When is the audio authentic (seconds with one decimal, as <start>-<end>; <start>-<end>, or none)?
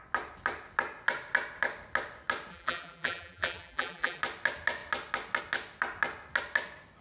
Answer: 0.0-2.5; 4.2-7.0